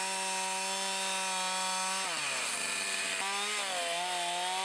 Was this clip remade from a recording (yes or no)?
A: no